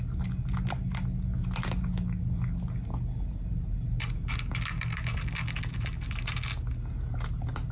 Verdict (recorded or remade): recorded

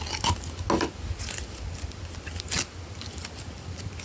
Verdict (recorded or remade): recorded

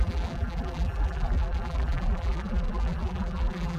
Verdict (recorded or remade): remade